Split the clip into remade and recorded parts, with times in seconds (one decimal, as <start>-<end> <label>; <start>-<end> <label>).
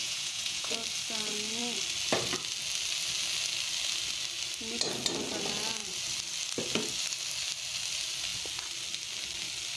0.0-0.7 remade; 0.7-9.8 recorded